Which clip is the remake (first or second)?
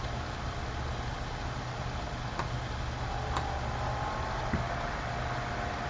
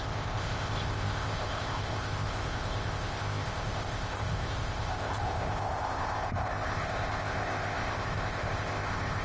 second